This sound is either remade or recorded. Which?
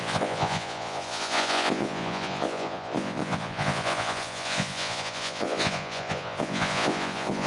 remade